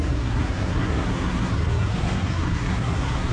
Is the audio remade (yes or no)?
yes